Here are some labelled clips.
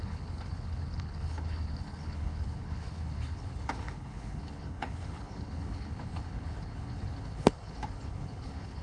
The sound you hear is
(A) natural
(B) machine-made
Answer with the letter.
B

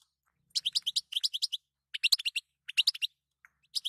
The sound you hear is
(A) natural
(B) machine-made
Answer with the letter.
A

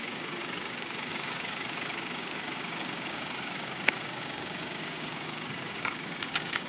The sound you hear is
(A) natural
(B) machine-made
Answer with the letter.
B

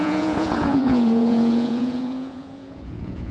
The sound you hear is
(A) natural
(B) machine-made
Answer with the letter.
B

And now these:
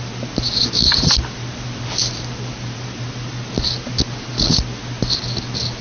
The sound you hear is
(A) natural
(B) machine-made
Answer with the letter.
A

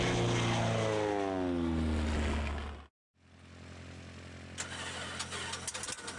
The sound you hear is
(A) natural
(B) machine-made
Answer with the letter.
A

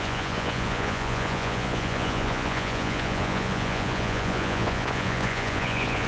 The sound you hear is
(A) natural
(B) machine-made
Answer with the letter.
B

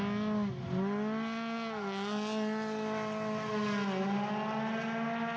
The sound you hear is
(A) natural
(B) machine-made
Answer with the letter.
A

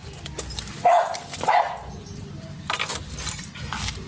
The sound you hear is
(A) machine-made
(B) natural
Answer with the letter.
B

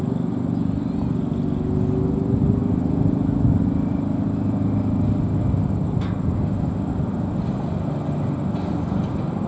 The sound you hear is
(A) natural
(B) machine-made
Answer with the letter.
A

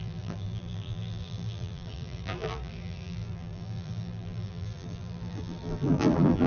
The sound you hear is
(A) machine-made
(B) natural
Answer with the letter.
A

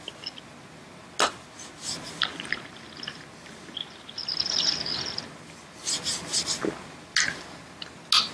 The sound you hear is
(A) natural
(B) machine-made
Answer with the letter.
A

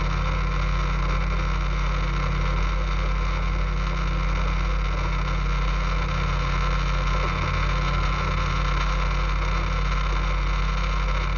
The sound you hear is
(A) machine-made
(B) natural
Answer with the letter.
B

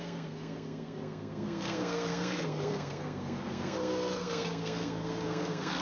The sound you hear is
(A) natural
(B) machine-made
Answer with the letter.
B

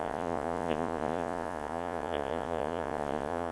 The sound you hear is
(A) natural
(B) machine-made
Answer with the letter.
B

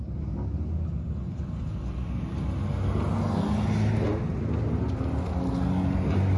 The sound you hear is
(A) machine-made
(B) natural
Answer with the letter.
B